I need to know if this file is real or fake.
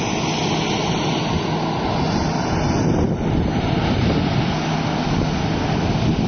real